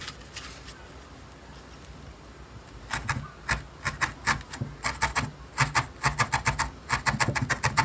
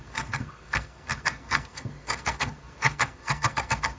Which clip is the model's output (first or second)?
second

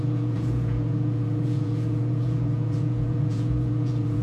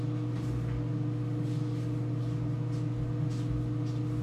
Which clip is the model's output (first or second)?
first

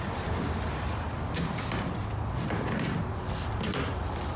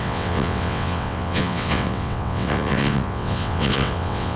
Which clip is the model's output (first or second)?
second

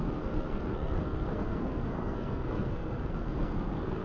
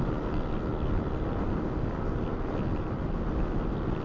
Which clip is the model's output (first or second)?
first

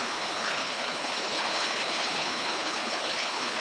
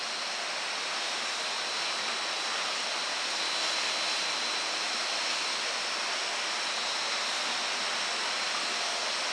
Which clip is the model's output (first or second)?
first